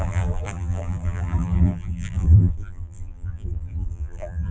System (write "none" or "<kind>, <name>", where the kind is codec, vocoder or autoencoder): vocoder, BigVGAN v2